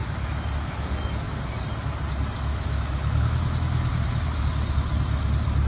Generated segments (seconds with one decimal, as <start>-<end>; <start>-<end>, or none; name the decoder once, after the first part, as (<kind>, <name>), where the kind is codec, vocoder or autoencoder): 0.0-1.4 (autoencoder, DAC-VAE); 2.5-4.5